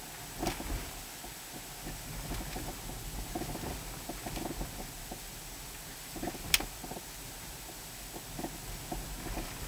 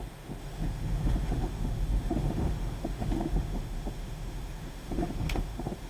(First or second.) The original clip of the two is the first